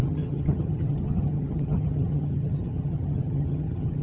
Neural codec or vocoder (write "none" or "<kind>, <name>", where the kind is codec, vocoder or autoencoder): vocoder, HiFi-GAN